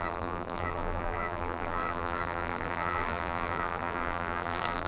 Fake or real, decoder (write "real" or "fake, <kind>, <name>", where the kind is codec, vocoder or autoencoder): fake, vocoder, BigVGAN v2